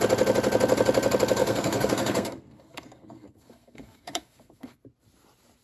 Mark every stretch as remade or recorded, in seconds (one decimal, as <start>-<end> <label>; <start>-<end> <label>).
0.0-1.4 recorded; 1.4-4.8 remade; 4.8-5.6 recorded